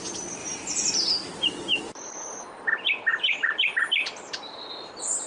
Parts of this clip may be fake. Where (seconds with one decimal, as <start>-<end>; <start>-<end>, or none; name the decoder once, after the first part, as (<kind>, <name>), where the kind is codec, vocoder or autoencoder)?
0.4-1.8 (vocoder, BigVGAN v2); 3.1-4.8